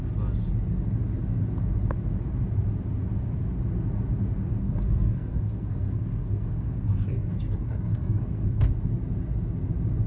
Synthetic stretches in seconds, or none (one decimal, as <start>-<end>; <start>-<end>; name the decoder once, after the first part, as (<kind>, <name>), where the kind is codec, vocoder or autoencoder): 4.6-8.7 (codec, SNAC)